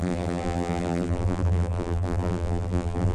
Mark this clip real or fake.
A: fake